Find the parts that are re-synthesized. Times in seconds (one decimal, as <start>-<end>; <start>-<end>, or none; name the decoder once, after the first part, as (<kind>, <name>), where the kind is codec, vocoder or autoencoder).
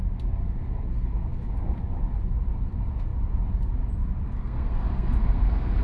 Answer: 4.4-5.8 (codec, SNAC)